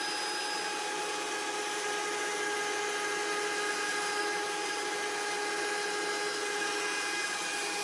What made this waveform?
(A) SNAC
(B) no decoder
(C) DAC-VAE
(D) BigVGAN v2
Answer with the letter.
B